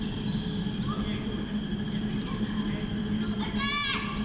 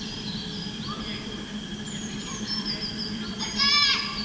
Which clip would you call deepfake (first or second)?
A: second